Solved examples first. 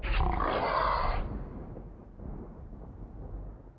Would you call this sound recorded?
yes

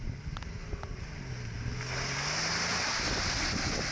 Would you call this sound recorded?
yes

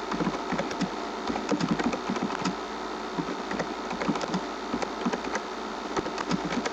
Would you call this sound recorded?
yes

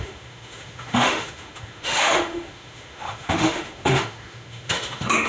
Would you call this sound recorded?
no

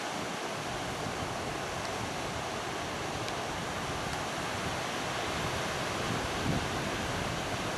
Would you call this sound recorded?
yes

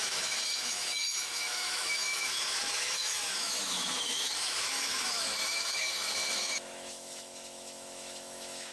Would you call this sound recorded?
no